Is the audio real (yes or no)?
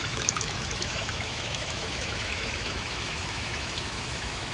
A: no